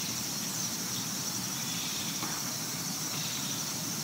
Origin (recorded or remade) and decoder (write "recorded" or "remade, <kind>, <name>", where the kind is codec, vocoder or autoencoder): remade, vocoder, BigVGAN v2